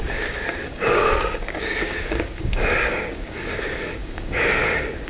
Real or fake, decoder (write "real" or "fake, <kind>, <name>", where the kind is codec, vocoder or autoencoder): fake, codec, DAC